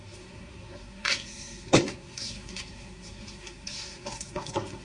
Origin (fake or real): fake